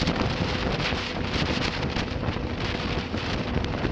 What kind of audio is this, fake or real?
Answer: fake